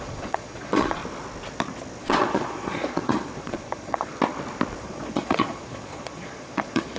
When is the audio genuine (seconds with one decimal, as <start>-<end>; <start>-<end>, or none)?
1.0-2.0; 4.1-4.8